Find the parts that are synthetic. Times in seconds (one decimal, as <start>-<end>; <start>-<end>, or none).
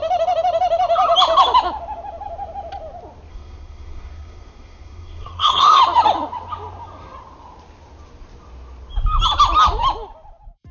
3.3-5.8